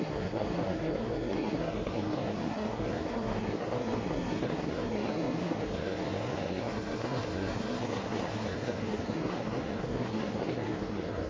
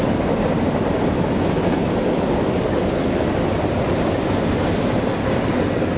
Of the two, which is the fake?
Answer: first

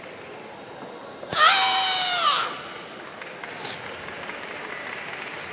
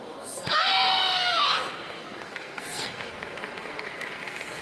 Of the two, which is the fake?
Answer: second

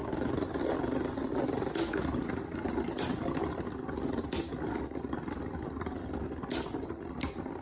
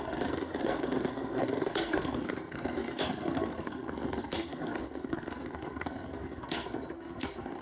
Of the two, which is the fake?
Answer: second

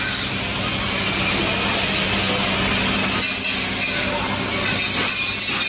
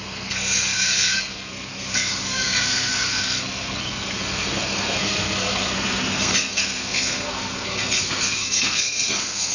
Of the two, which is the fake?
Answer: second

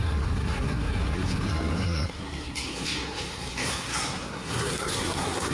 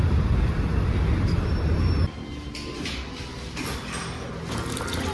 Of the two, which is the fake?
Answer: first